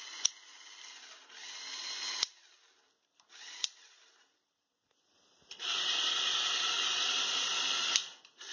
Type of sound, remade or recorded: recorded